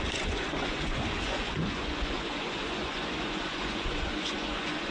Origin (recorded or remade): remade